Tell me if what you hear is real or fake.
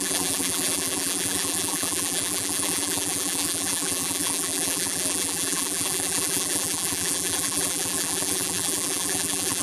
fake